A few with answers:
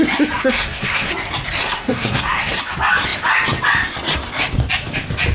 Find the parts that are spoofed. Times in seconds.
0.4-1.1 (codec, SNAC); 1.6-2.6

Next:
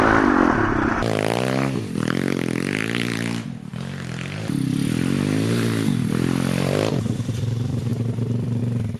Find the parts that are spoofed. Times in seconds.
0.0-9.0 (vocoder, BigVGAN v2)

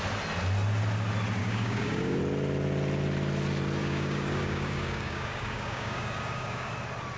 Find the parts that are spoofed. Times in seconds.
1.4-2.2 (codec, DAC); 3.8-6.7

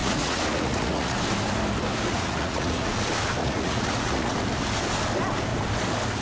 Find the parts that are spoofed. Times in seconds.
0.0-1.2 (vocoder, Vocos); 2.1-2.9; 3.4-4.4

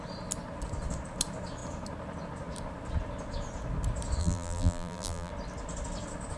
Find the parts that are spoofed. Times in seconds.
4.2-5.3 (vocoder, BigVGAN v2)